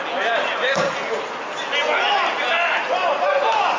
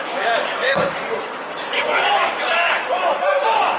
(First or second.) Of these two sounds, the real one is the first